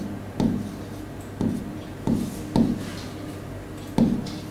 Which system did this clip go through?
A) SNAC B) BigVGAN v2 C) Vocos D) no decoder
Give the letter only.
D